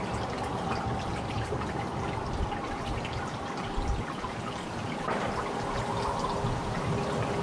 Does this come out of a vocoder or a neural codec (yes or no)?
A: no